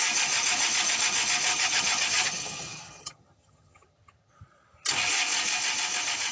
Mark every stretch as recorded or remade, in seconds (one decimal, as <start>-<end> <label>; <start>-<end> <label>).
0.0-1.5 recorded; 1.5-4.3 remade; 4.3-6.3 recorded